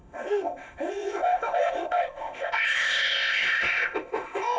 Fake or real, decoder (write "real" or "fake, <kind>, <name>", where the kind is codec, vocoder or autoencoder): fake, codec, ZipCodec